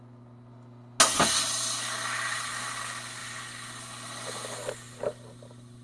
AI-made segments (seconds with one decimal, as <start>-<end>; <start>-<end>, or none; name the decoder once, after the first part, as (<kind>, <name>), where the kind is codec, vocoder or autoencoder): none